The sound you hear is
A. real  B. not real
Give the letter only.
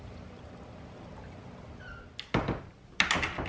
A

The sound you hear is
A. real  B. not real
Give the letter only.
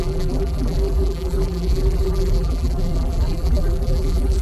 B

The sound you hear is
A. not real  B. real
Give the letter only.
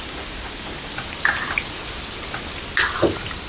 B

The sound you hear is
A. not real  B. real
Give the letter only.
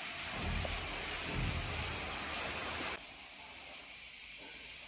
A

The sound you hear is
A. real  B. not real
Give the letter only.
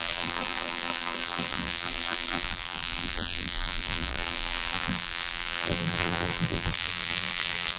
B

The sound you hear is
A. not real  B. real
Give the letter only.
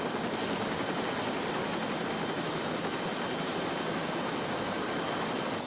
B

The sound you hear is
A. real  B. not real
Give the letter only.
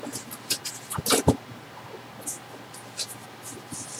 A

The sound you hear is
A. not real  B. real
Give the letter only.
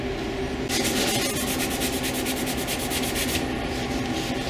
B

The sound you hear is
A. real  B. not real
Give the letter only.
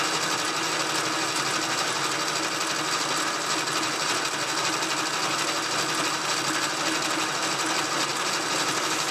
A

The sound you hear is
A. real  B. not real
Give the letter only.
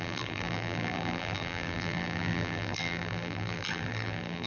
B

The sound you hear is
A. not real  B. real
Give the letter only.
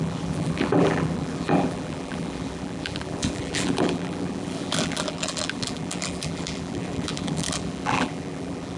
A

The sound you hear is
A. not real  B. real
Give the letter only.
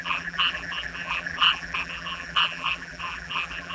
A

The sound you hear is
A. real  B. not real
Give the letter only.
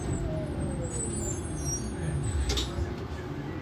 A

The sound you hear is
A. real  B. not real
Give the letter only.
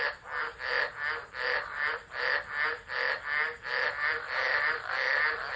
B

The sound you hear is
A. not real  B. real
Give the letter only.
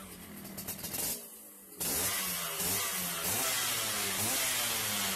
B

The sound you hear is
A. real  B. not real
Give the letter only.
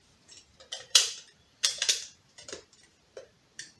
B